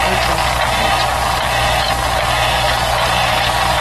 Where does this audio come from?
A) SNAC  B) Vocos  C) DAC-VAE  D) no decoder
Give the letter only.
D